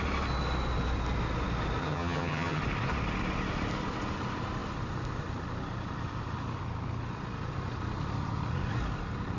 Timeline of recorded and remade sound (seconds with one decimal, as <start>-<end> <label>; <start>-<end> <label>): 0.0-1.8 recorded; 1.8-2.6 remade; 2.6-9.4 recorded